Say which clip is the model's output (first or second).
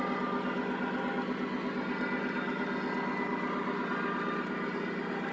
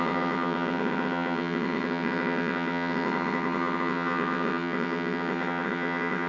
second